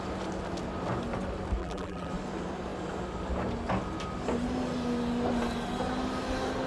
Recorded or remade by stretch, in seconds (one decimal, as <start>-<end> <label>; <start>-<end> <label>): 0.0-1.6 recorded; 1.6-2.1 remade; 2.1-6.7 recorded